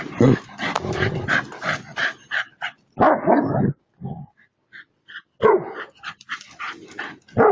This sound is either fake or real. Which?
real